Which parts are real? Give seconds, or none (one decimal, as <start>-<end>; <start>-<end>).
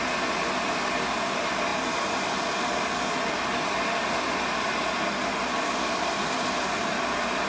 0.0-1.7; 3.0-4.0; 6.9-7.5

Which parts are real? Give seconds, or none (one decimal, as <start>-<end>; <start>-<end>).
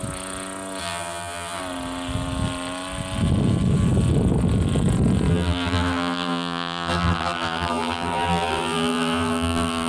0.0-0.8; 1.6-5.3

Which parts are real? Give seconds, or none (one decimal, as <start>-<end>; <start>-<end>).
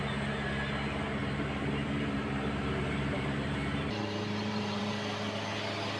0.0-1.2; 4.8-6.0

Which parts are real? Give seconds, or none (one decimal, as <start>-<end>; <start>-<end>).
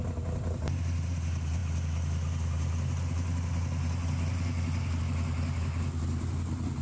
0.0-6.8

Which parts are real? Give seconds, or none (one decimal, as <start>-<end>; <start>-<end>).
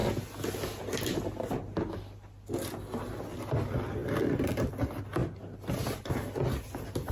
0.0-4.0; 4.7-7.1